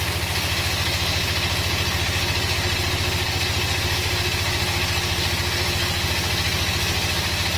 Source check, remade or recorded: recorded